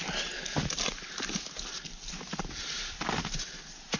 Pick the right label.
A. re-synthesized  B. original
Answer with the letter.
B